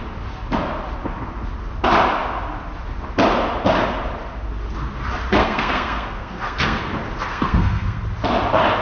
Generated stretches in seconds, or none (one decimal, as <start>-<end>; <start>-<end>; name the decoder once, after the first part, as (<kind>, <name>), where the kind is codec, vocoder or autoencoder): 5.4-6.8 (codec, SNAC); 7.3-8.0